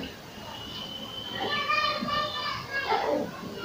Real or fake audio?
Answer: real